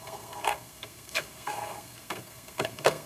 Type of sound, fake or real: fake